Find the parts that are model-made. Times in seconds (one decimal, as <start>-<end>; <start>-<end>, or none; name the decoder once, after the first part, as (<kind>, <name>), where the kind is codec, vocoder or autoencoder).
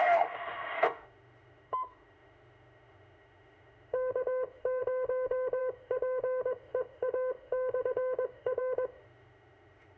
0.0-10.0 (autoencoder, DAC-VAE)